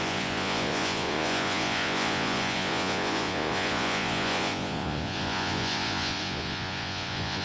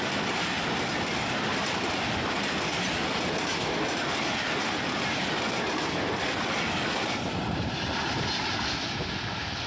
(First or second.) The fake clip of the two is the first